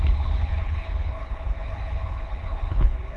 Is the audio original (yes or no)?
no